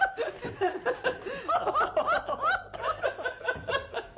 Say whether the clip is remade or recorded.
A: remade